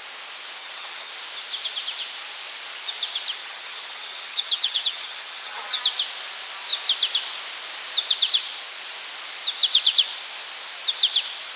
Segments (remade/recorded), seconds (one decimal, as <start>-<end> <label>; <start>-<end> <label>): 0.0-0.6 recorded; 0.6-1.1 remade; 1.1-3.4 recorded; 3.4-5.8 remade; 5.8-11.6 recorded